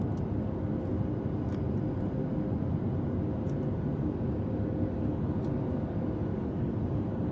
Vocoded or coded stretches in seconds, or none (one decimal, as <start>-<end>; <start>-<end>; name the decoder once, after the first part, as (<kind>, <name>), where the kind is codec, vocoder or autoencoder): 6.3-6.8 (codec, DAC)